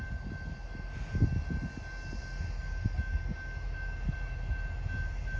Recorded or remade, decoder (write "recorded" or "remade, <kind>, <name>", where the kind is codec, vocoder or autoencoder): recorded